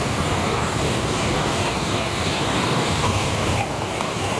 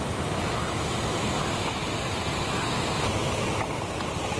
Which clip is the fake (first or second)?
first